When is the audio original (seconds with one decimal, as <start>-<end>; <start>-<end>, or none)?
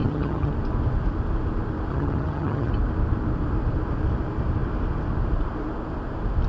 0.5-1.9; 2.7-6.5